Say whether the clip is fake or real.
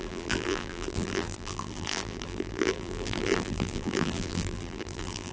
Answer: fake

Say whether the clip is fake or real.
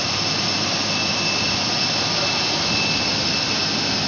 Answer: fake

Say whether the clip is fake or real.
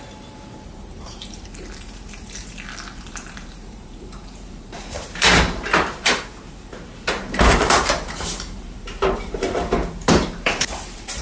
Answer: fake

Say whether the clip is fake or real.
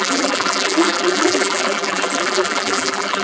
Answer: fake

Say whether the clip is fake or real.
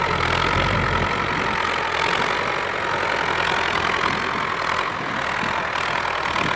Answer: real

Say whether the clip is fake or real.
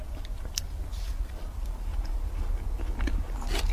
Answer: real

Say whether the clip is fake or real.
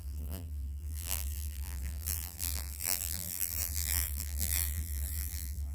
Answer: fake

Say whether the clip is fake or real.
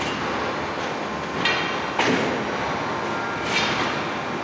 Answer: real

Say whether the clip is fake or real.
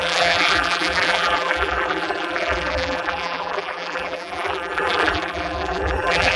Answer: fake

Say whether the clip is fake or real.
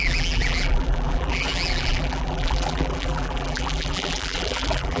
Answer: fake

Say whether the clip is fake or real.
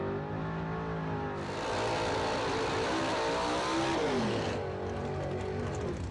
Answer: real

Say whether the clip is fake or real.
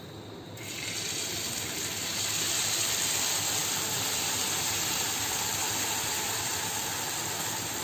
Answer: real